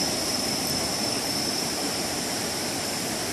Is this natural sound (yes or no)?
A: no